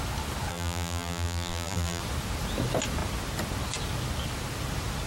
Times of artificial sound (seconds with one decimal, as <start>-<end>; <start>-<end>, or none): 0.5-2.0